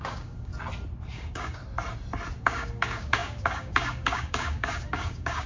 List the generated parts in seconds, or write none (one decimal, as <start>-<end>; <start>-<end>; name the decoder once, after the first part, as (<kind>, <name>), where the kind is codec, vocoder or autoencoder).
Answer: 0.0-0.5 (codec, DAC); 1.1-1.6; 2.4-5.5